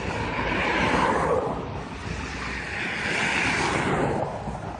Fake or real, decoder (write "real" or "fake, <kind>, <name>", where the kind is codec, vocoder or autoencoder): real